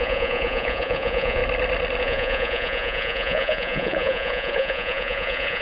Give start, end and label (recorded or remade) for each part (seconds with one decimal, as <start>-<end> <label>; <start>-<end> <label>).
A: 0.0-1.4 remade; 1.4-2.0 recorded; 2.0-5.6 remade